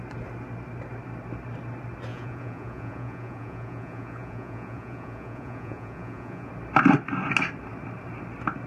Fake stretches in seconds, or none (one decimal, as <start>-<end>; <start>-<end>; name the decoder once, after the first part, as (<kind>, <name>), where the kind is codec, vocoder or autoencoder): 2.1-6.5 (vocoder, Vocos)